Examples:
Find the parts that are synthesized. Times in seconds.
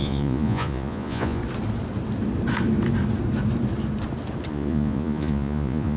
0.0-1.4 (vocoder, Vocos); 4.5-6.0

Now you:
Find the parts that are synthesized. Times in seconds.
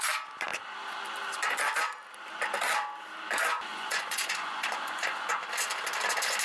3.7-5.3 (vocoder, Vocos)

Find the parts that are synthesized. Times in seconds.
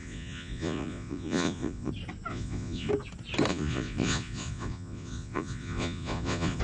0.0-1.9 (vocoder, Vocos); 2.3-2.9; 3.5-6.6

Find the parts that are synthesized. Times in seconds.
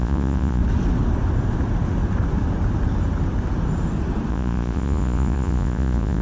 0.0-0.6 (vocoder, Vocos); 4.3-6.2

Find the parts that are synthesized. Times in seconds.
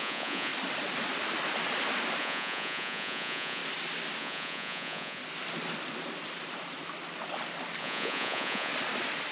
0.0-0.5 (vocoder, Vocos); 2.2-3.6; 4.2-5.2; 7.8-8.7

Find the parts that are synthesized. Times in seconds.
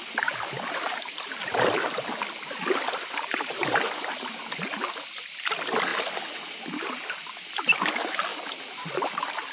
none